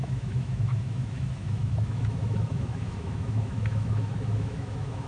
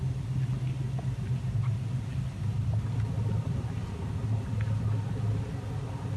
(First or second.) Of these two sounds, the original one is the second